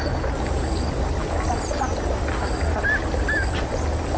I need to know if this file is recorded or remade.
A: recorded